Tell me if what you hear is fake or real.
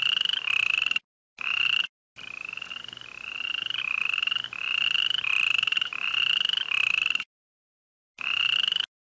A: real